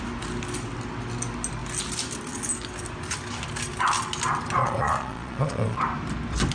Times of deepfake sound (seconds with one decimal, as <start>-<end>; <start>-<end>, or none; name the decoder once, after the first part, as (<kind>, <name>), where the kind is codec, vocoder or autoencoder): 4.6-5.8 (vocoder, Vocos)